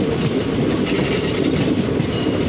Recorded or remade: recorded